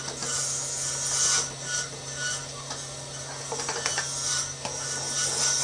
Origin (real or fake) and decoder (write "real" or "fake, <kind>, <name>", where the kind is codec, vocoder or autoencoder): real